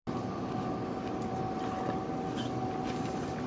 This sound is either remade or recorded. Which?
recorded